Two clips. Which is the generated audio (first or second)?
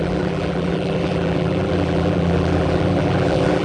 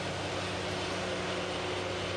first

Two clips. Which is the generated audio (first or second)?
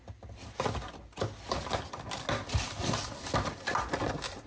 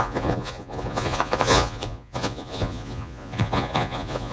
second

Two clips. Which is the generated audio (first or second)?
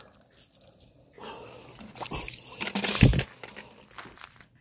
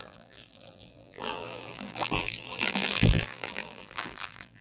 second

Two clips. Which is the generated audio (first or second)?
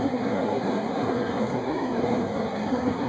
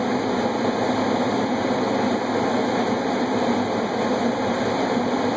first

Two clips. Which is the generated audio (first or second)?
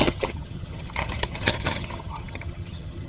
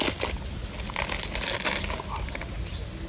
first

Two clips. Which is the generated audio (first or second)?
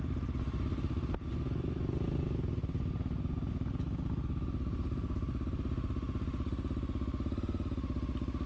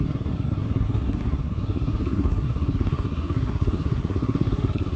second